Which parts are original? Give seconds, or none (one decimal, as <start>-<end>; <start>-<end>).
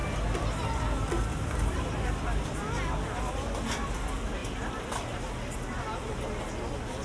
0.0-7.0